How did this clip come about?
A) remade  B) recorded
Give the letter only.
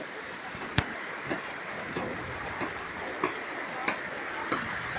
B